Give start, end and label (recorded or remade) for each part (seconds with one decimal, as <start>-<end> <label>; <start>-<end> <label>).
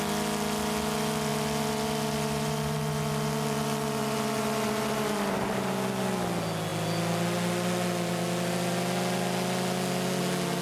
0.0-10.6 recorded